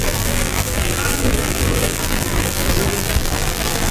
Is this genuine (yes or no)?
no